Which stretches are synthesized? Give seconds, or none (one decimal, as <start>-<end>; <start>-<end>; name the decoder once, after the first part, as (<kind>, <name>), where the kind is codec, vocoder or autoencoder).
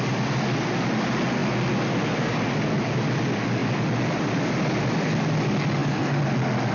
none